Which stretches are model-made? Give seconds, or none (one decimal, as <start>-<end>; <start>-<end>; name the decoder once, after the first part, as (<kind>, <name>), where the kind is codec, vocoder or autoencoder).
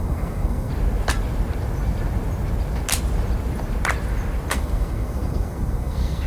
0.0-0.7 (codec, SNAC); 4.5-6.3